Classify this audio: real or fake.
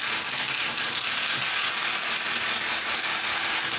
real